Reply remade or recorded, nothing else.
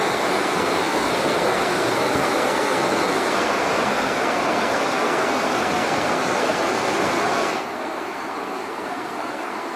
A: remade